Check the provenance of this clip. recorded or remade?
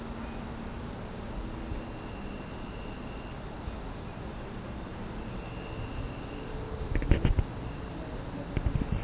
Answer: recorded